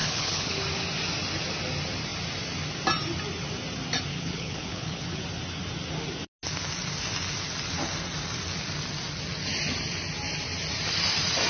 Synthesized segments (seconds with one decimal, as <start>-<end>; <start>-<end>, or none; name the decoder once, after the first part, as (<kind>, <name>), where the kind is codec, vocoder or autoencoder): 0.0-0.6 (codec, HILCodec); 4.1-5.2